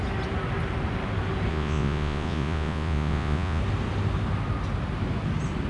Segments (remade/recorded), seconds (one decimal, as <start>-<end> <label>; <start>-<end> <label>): 0.0-1.5 recorded; 1.5-3.6 remade; 3.6-5.7 recorded